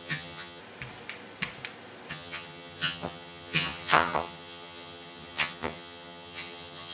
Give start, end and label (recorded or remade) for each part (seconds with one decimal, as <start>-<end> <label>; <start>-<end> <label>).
0.0-0.6 remade; 0.6-2.1 recorded; 2.1-6.9 remade